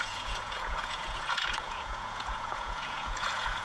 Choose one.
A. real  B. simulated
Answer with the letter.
B